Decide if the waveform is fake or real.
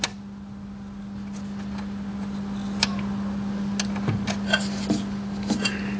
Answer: real